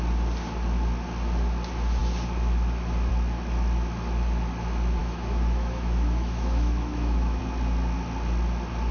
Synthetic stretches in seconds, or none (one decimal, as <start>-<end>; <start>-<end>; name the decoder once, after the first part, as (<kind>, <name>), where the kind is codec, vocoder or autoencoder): 5.0-7.4 (autoencoder, DAC-VAE)